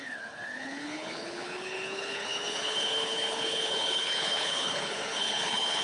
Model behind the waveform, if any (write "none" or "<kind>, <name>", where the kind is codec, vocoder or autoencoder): codec, HILCodec